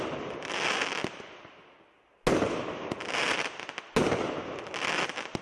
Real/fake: real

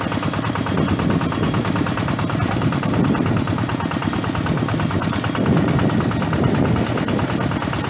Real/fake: real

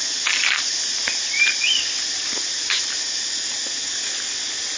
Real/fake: real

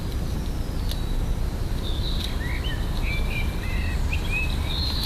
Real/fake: real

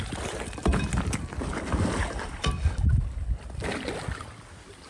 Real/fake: real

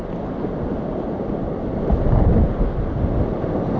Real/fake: real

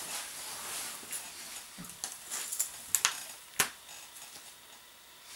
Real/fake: real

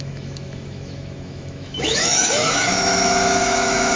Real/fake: fake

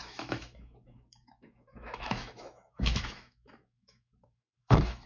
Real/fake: fake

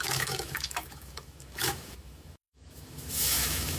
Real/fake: fake